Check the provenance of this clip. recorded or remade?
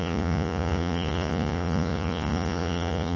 remade